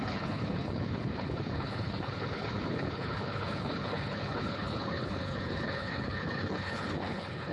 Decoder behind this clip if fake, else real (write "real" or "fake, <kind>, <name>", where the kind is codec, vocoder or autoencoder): fake, codec, HILCodec